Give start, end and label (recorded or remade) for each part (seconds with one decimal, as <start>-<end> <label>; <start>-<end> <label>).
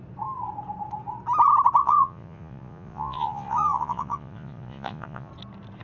0.0-1.8 recorded; 1.8-5.3 remade; 5.3-5.8 recorded